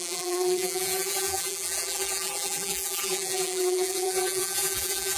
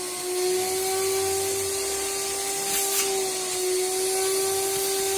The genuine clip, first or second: second